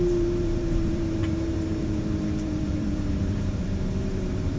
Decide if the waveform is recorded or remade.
remade